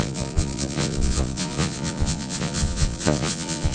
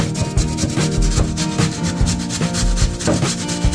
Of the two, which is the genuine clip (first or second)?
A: second